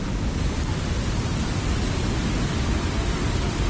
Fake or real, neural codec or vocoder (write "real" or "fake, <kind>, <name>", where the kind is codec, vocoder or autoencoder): real